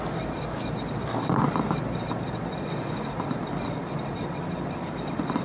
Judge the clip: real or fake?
real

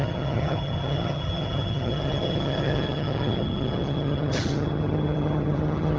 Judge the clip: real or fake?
fake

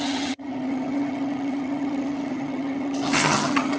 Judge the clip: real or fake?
fake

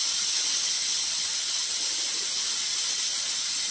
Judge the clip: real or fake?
real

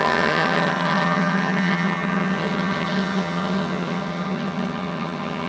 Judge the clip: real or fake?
fake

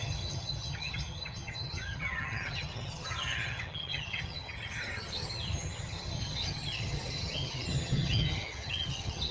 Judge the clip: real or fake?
fake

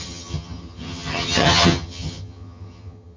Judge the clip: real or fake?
fake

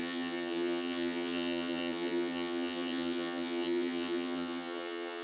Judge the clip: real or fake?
fake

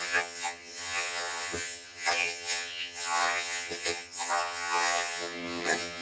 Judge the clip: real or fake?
fake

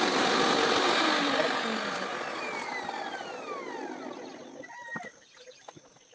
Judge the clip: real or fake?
real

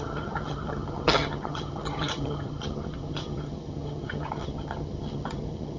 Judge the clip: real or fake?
fake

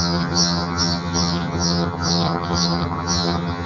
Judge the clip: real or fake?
fake